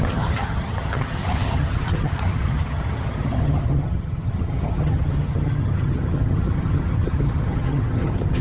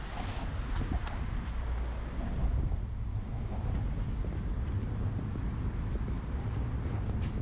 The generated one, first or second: first